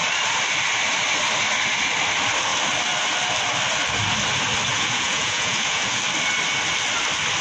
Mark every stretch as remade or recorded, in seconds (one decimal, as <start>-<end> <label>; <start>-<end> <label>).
0.0-4.7 recorded; 4.7-6.0 remade; 6.0-7.4 recorded